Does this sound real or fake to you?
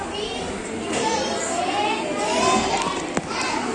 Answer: real